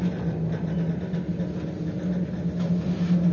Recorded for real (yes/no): yes